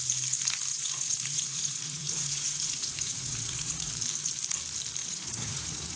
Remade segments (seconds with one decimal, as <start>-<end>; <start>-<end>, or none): 0.7-3.9; 5.0-6.0